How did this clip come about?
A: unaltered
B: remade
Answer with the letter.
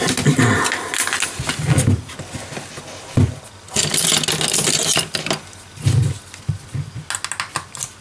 A